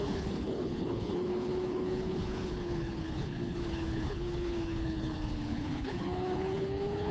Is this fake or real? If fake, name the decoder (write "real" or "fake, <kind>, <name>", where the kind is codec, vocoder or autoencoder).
fake, codec, HILCodec